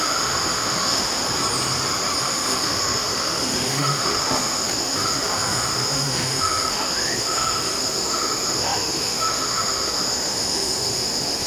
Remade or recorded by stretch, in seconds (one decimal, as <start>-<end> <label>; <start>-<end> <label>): 0.0-1.2 remade; 1.2-2.2 recorded; 2.2-11.5 remade